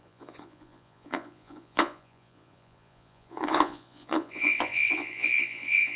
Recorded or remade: remade